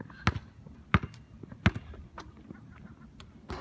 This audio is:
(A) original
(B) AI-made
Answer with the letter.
A